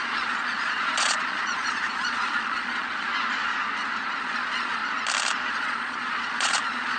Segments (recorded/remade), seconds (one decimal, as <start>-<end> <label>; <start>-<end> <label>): 0.0-3.1 remade; 3.1-4.2 recorded; 4.2-4.8 remade; 4.8-5.5 recorded; 5.5-7.0 remade